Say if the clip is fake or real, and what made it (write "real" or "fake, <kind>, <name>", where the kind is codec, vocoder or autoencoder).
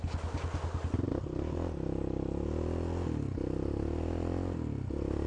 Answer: real